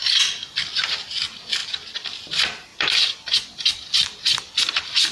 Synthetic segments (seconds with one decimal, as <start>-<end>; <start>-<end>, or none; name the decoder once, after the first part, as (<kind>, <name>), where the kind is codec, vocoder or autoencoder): 0.0-1.0 (vocoder, BigVGAN v2); 1.6-2.1; 2.7-5.1